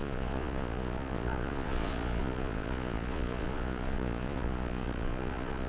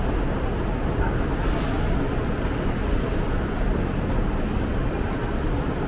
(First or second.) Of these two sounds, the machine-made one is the first